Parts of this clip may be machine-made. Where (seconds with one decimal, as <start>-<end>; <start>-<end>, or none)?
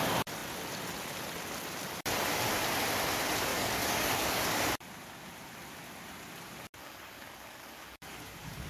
3.5-4.7; 6.8-8.7